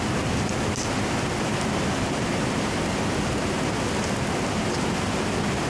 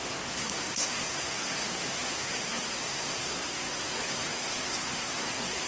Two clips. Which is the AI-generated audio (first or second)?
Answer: second